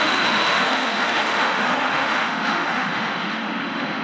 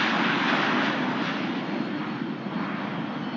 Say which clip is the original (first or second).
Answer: second